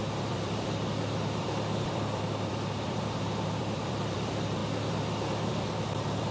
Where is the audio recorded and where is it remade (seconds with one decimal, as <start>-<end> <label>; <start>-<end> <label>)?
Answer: 0.0-4.6 remade; 4.6-5.5 recorded; 5.5-6.3 remade